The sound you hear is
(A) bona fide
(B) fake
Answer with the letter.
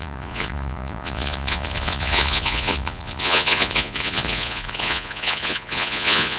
B